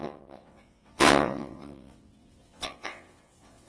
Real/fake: fake